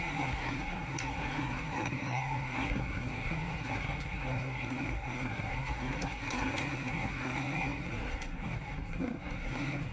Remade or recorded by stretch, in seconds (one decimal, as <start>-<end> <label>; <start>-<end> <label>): 0.0-9.9 remade